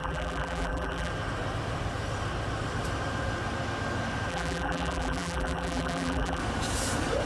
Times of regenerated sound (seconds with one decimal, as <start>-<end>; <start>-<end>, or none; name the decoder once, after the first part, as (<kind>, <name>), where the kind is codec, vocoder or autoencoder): 0.0-1.1 (vocoder, BigVGAN v2); 4.3-6.4